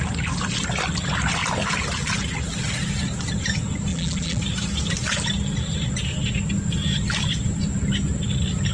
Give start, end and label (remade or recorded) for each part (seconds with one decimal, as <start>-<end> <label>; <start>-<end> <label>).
0.0-3.9 recorded; 3.9-4.4 remade; 4.4-8.7 recorded